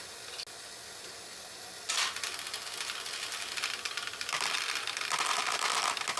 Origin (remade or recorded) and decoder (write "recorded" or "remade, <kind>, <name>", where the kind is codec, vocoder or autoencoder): recorded